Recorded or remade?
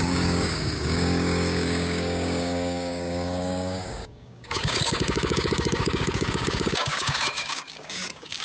remade